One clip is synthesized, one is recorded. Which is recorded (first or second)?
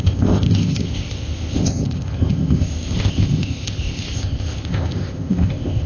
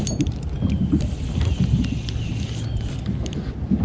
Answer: second